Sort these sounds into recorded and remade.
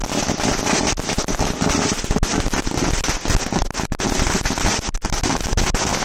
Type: recorded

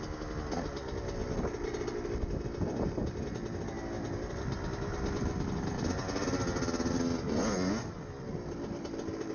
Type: recorded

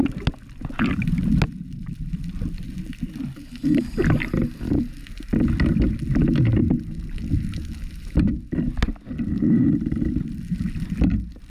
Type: recorded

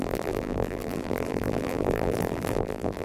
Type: remade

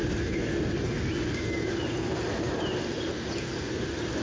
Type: recorded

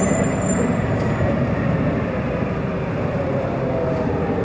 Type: remade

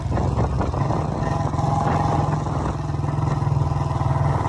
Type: recorded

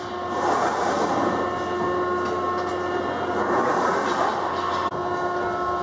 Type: recorded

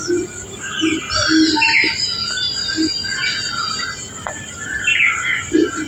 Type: recorded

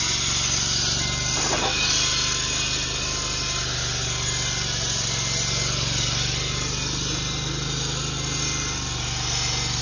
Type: recorded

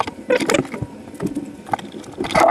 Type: recorded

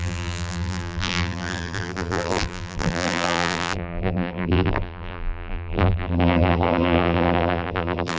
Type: remade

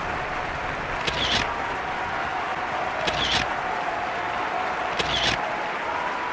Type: recorded